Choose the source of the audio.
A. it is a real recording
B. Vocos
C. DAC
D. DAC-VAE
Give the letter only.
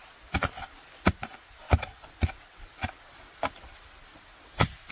A